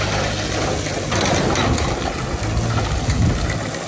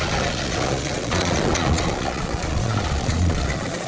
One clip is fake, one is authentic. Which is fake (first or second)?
second